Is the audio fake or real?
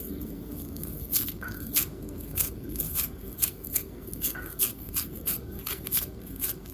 fake